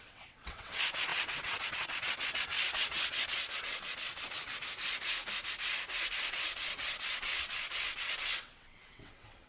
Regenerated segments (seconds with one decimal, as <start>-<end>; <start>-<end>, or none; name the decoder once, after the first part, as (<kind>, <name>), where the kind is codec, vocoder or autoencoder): 0.0-4.5 (vocoder, WaveNeXt); 6.2-9.5